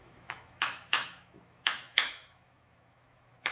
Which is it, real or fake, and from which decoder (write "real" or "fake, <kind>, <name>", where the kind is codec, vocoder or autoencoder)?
fake, autoencoder, DAC-VAE